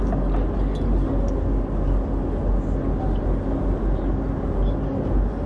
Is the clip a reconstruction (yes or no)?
no